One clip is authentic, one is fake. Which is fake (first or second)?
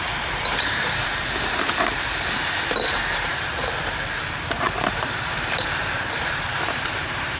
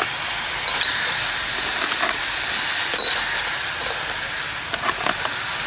first